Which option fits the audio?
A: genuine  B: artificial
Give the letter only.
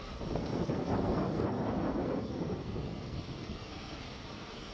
B